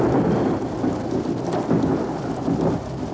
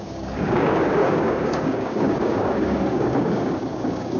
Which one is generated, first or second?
second